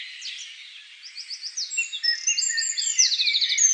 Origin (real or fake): real